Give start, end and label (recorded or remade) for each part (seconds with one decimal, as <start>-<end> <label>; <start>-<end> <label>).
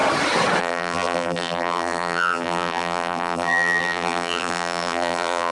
0.0-0.6 recorded; 0.6-5.5 remade